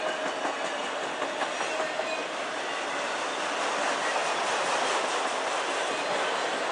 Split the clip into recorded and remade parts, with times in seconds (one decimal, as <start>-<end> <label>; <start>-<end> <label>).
0.0-2.2 recorded; 2.2-3.2 remade; 3.2-6.7 recorded